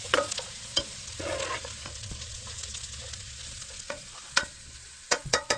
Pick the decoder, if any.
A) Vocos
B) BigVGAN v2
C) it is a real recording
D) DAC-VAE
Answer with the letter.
A